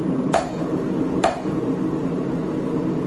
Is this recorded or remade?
recorded